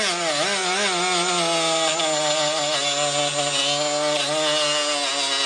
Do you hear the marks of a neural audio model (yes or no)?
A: no